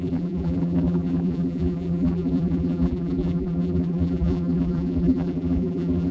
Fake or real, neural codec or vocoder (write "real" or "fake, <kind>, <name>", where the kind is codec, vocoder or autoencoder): fake, vocoder, BigVGAN v2